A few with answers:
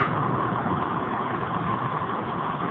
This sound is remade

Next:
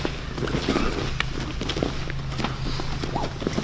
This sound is recorded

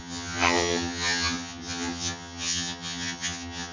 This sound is remade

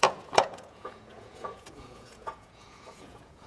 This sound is remade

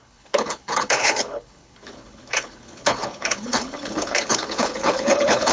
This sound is remade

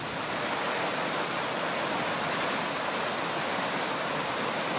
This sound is recorded